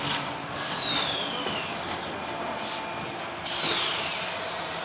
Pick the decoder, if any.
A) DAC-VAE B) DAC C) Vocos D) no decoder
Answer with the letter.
D